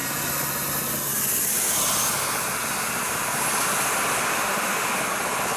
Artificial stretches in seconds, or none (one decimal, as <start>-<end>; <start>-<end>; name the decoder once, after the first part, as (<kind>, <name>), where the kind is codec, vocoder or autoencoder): 4.3-4.9 (autoencoder, DAC-VAE)